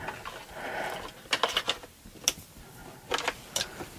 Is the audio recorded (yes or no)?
yes